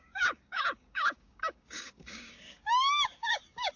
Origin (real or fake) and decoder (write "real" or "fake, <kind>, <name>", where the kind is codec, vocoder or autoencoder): fake, codec, DAC